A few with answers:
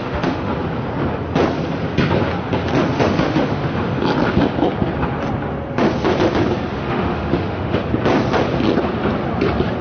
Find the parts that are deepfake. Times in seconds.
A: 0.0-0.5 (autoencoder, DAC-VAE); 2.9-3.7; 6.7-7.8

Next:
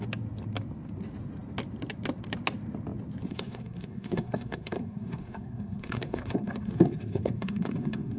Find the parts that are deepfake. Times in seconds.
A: 3.3-8.2 (codec, SNAC)

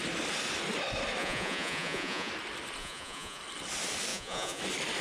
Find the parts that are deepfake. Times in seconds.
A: 1.2-2.3 (vocoder, Vocos); 2.8-3.4; 4.1-4.6

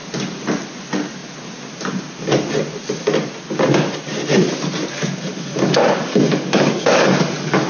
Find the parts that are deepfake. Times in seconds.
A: 5.3-7.7 (codec, DAC)

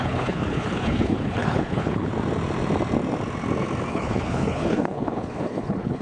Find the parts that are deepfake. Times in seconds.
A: 0.0-2.1 (codec, HILCodec); 3.9-6.0